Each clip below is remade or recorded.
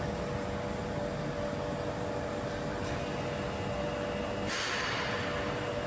recorded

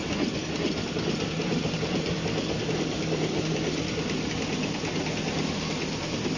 recorded